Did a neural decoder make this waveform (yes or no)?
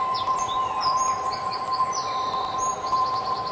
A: no